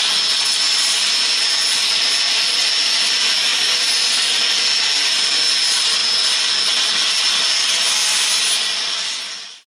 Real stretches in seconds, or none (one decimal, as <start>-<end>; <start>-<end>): 0.0-3.5; 4.3-9.7